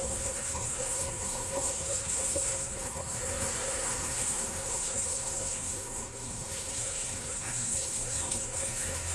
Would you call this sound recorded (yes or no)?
no